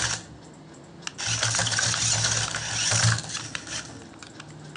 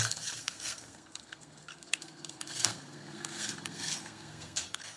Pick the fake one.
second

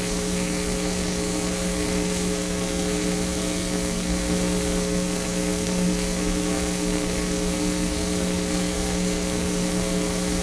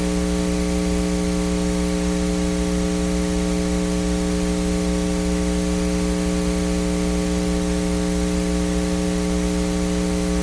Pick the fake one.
first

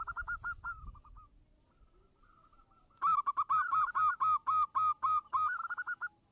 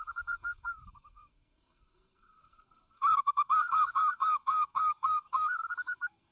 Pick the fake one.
second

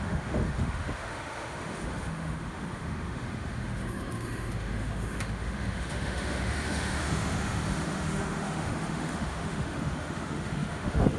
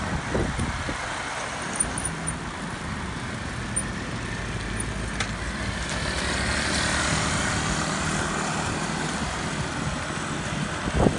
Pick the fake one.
first